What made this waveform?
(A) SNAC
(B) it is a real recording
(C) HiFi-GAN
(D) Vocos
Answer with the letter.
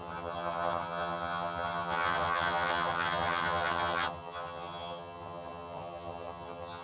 C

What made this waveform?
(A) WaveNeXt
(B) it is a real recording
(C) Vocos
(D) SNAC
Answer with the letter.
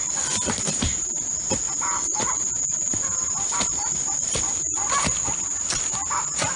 B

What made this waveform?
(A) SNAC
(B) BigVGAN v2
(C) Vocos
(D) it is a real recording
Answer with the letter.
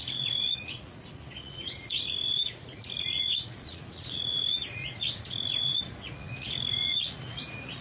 C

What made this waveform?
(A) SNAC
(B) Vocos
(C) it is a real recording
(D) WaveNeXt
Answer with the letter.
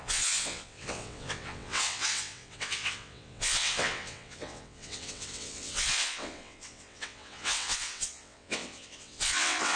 D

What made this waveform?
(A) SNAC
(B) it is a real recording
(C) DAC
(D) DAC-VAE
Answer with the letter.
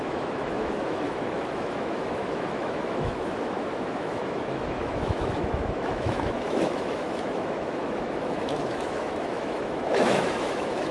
D